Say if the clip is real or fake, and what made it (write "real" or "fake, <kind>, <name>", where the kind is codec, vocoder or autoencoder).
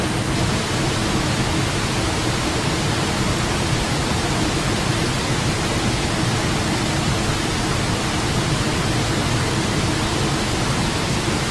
real